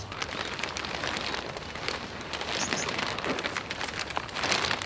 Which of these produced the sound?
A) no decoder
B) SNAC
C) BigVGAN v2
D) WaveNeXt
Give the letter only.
A